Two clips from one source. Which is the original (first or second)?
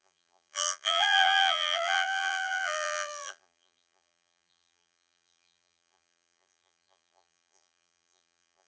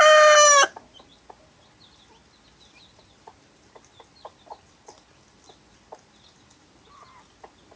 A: second